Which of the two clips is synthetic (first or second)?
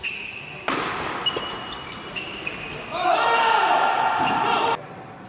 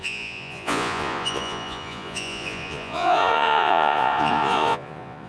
second